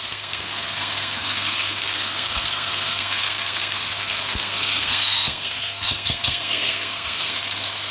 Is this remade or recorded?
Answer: remade